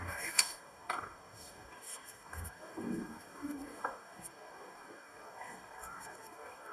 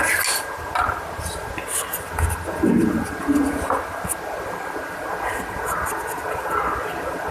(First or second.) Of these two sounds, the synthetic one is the first